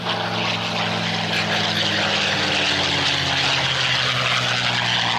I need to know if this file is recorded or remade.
recorded